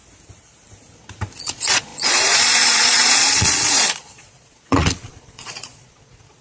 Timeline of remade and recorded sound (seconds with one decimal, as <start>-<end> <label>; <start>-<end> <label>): 0.0-1.4 recorded; 1.4-6.4 remade